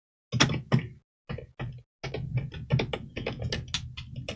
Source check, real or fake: real